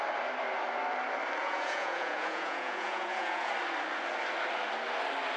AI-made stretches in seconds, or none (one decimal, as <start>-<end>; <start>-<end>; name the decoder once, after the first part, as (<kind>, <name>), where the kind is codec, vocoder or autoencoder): 1.4-3.5 (vocoder, Vocos)